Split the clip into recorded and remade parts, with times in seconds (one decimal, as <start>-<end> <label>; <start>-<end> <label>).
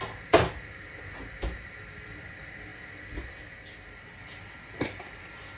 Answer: 0.0-5.6 recorded